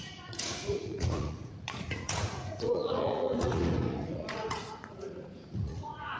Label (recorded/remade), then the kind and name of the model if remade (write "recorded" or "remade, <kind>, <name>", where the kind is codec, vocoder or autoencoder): remade, vocoder, Vocos